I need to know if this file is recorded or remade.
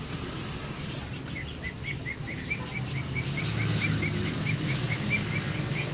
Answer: recorded